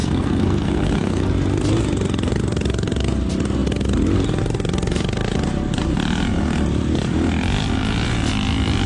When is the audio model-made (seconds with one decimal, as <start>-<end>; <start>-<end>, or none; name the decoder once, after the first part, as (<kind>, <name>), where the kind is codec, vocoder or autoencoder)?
0.0-1.3 (codec, SNAC)